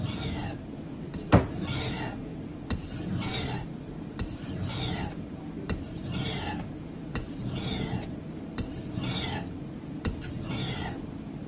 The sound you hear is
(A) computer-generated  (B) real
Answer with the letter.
B